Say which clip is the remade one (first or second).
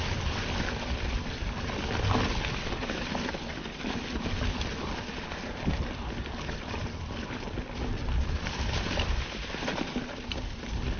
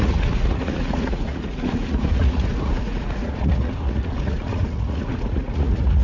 second